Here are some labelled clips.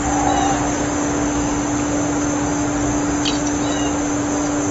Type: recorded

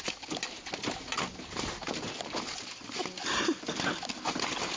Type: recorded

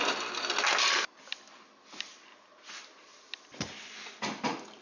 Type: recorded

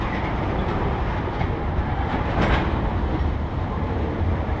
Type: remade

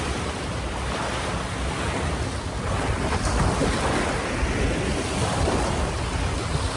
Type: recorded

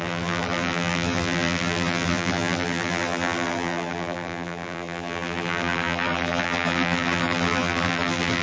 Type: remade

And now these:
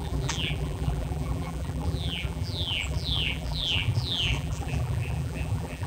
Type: remade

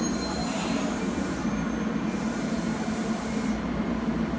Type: remade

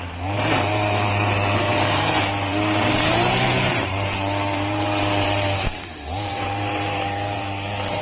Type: remade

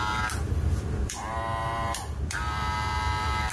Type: remade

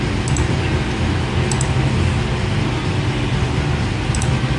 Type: recorded